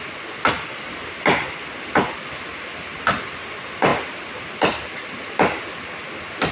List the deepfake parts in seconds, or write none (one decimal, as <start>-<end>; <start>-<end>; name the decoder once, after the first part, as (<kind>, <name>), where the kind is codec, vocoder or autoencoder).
none